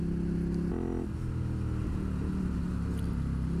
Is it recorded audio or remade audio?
recorded